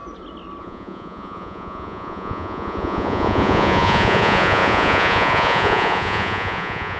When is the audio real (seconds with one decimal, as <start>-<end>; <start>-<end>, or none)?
0.0-0.6